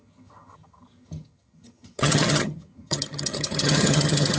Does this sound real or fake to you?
fake